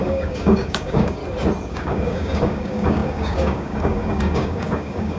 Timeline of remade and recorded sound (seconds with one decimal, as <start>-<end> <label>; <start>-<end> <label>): 0.0-1.2 remade; 1.2-1.7 recorded; 1.7-5.2 remade